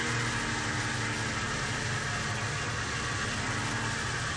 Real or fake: real